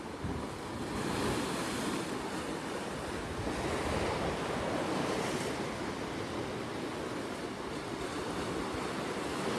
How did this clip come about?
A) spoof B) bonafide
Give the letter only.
B